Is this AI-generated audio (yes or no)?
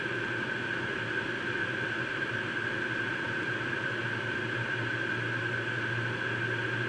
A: no